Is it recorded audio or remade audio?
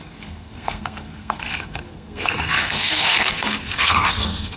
remade